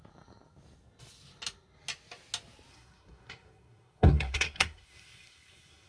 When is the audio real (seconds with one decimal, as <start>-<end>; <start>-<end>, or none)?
0.0-2.7